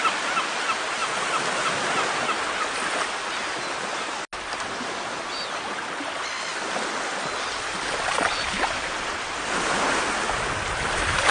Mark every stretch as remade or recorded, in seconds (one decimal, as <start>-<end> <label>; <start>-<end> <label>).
0.0-11.3 recorded